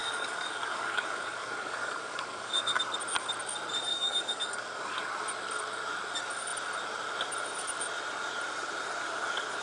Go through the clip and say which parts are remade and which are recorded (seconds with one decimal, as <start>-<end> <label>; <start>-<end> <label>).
0.0-2.8 remade; 2.8-3.9 recorded; 3.9-5.0 remade; 5.0-9.6 recorded